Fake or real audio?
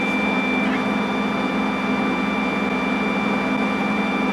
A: real